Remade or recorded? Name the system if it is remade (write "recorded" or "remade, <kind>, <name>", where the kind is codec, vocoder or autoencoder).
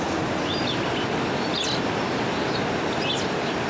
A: recorded